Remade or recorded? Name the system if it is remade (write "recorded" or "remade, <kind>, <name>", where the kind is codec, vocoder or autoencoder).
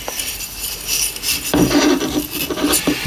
recorded